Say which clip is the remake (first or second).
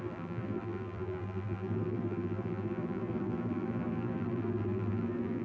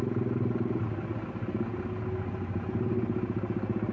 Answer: first